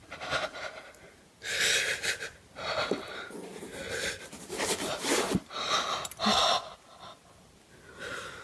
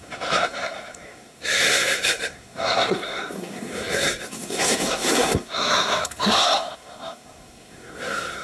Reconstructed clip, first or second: second